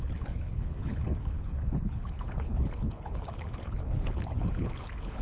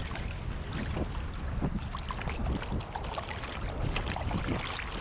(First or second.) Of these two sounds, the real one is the second